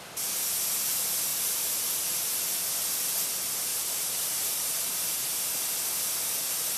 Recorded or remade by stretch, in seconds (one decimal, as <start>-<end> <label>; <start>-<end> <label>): 0.0-1.3 recorded; 1.3-2.4 remade; 2.4-3.7 recorded; 3.7-5.5 remade; 5.5-6.8 recorded